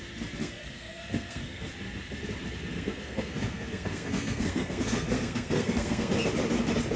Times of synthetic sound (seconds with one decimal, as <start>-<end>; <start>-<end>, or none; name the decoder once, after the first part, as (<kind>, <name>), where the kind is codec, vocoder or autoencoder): 0.4-1.7 (codec, SNAC); 2.7-6.1